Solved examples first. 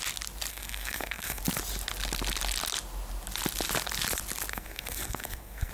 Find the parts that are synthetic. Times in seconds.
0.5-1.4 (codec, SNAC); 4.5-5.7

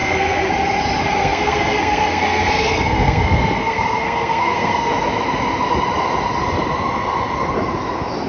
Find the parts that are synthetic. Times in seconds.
0.0-0.5 (codec, SNAC); 1.2-4.9